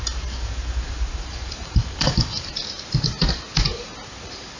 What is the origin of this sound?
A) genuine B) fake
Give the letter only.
B